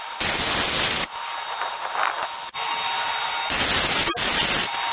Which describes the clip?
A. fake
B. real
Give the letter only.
B